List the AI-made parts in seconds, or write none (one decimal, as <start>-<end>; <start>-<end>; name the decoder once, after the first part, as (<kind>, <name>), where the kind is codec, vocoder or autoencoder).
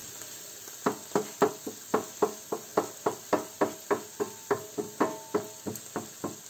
none